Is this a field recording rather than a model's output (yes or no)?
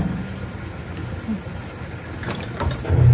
yes